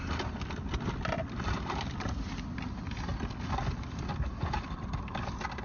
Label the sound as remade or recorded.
recorded